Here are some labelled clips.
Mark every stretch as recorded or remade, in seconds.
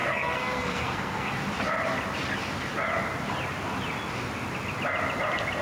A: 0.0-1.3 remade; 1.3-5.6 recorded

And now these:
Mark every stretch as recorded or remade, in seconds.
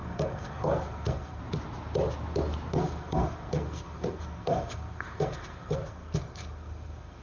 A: 0.0-1.4 remade; 1.4-2.7 recorded; 2.7-7.2 remade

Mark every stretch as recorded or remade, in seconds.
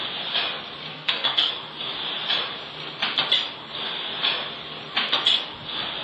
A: 0.0-0.9 recorded; 0.9-1.5 remade; 1.5-6.0 recorded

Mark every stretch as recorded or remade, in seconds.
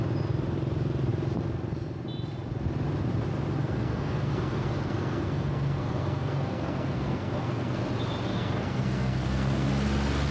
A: 0.0-3.6 recorded; 3.6-7.8 remade; 7.8-8.3 recorded; 8.3-9.7 remade; 9.7-10.3 recorded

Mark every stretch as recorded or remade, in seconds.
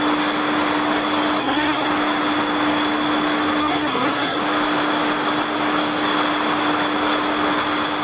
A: 0.0-1.4 recorded; 1.4-1.9 remade; 1.9-3.6 recorded; 3.6-4.4 remade; 4.4-8.0 recorded